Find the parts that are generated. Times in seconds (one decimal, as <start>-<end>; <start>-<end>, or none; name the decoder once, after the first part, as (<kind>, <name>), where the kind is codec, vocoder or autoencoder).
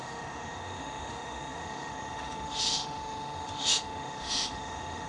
0.0-5.1 (autoencoder, DAC-VAE)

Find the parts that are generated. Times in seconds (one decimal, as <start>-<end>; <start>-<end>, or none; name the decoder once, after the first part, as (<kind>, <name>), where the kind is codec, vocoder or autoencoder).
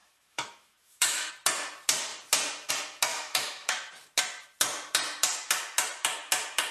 0.0-1.3 (autoencoder, DAC-VAE); 3.1-3.9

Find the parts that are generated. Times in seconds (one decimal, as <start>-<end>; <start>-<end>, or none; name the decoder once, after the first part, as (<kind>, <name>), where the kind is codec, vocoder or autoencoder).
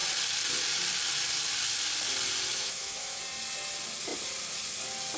2.5-3.2 (autoencoder, DAC-VAE)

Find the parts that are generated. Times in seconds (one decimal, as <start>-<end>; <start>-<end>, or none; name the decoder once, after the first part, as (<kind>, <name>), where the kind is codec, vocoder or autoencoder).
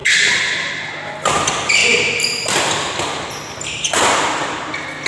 none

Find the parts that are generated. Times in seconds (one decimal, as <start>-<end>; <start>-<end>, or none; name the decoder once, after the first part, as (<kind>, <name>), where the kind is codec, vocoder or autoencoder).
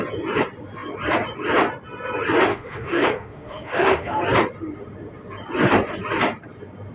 2.5-4.2 (autoencoder, DAC-VAE)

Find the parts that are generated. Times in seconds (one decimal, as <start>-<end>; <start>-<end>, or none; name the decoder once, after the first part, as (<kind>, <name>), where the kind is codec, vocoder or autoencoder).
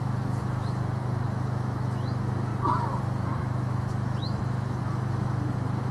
0.0-2.5 (autoencoder, DAC-VAE); 3.0-5.9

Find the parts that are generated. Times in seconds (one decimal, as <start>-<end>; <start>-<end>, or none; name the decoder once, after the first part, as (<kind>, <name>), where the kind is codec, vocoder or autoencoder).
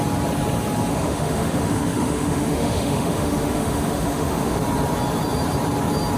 0.9-4.6 (autoencoder, DAC-VAE)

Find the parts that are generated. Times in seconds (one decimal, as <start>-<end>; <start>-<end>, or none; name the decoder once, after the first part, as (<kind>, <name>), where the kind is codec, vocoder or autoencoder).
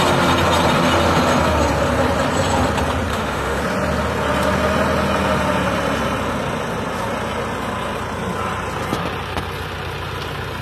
3.1-3.6 (autoencoder, DAC-VAE)